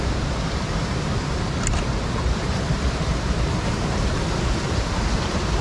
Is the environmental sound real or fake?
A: fake